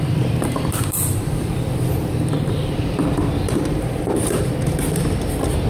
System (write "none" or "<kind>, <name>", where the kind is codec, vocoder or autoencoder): vocoder, BigVGAN v2